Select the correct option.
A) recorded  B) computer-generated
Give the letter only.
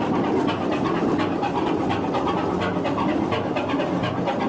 A